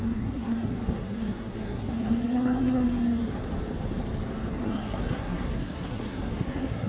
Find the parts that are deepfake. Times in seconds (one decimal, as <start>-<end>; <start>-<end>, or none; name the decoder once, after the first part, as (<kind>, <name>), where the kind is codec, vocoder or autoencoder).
0.0-3.2 (codec, SNAC); 4.5-6.9